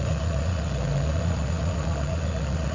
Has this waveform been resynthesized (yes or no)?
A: yes